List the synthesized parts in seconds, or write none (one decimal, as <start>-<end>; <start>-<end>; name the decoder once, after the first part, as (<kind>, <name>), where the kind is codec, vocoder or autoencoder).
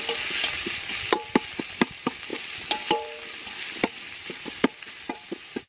none